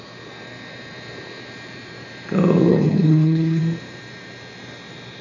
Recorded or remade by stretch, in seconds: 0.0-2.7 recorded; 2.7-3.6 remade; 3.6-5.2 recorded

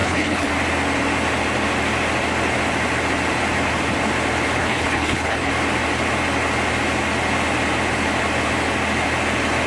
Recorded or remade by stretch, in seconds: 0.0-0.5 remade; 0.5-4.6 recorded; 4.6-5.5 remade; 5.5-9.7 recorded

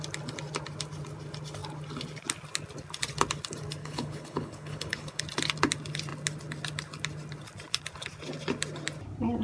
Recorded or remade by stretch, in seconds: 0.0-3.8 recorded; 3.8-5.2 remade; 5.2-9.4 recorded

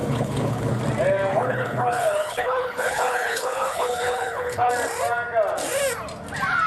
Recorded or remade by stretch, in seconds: 0.0-0.8 remade; 0.8-1.3 recorded; 1.3-4.7 remade; 4.7-6.7 recorded